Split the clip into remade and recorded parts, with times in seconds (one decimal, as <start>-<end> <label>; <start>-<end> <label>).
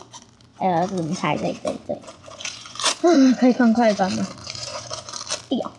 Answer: 0.0-0.5 recorded; 0.5-4.0 remade; 4.0-4.4 recorded; 4.4-5.2 remade; 5.2-5.8 recorded